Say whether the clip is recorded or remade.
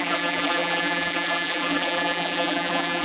remade